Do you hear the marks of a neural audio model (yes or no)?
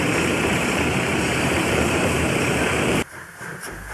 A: yes